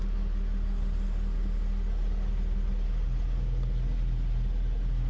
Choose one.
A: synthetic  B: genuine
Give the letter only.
B